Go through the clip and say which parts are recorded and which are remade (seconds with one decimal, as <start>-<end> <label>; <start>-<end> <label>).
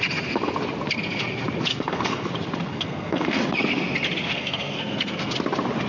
0.0-1.7 recorded; 1.7-2.3 remade; 2.3-2.7 recorded; 2.7-3.4 remade; 3.4-4.3 recorded; 4.3-5.3 remade; 5.3-5.9 recorded